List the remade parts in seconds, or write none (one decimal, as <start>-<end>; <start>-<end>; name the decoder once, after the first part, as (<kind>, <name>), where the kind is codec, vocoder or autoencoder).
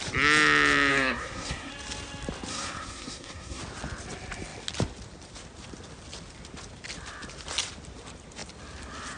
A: 0.9-1.7 (codec, SNAC); 2.5-3.6